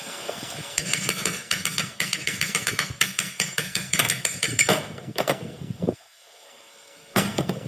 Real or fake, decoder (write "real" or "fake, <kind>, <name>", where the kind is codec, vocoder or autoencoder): fake, codec, SNAC